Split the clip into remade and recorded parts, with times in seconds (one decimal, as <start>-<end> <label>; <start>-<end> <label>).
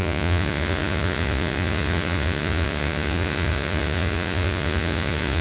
0.0-5.4 remade